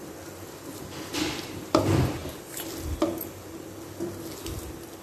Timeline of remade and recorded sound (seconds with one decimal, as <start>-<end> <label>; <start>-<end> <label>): 0.0-5.0 recorded